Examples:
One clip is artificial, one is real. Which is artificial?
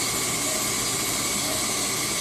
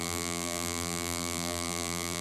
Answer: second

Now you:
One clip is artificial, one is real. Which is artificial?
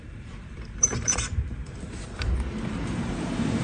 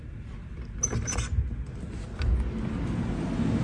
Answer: first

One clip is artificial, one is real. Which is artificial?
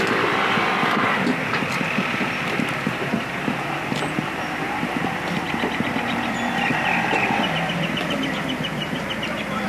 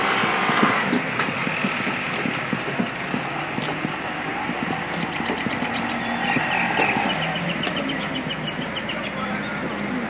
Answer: first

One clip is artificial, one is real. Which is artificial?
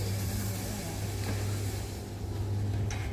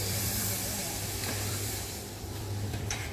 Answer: second